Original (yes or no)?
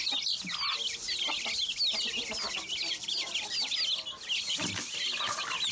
yes